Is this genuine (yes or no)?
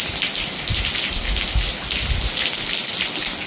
yes